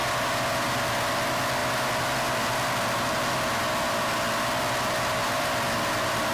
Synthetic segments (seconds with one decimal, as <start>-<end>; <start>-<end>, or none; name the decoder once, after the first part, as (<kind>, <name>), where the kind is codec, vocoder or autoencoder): none